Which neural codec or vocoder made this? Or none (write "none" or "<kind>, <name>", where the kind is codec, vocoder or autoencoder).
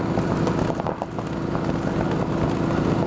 none